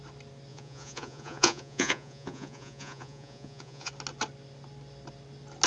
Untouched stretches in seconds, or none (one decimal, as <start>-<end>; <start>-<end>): 0.0-0.5; 3.9-5.7